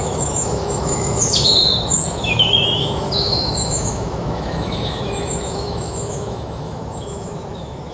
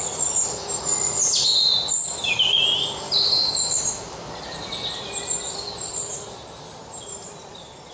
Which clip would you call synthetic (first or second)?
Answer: first